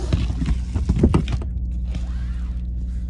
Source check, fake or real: real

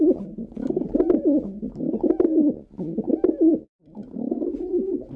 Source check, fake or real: real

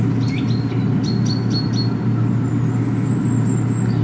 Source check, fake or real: real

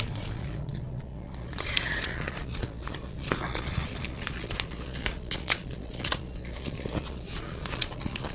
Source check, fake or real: fake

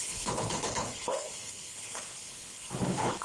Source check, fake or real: fake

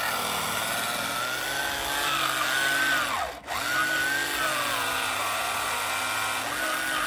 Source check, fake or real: real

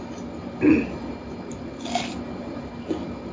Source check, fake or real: real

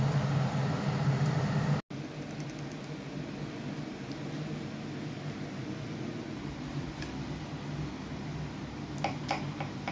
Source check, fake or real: real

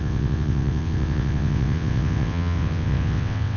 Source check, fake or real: fake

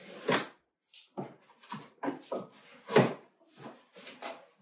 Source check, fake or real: real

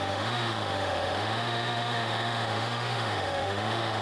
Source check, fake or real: fake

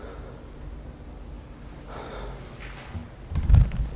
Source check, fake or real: real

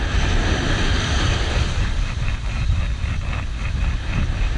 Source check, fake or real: real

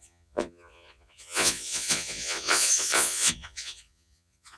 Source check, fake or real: fake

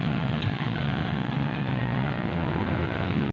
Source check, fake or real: fake